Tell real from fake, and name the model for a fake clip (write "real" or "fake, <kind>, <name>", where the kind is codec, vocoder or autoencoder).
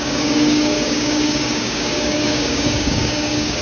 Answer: fake, codec, DAC